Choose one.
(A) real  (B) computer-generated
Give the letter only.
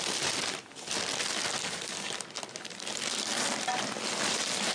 A